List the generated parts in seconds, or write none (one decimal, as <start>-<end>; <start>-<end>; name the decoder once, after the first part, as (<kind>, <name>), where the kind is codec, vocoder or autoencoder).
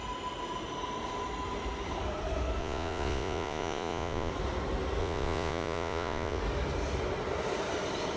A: 2.6-4.3 (vocoder, Vocos); 5.0-6.4